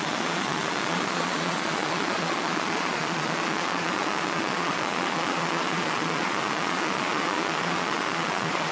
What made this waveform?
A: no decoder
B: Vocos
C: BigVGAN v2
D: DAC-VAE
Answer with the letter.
B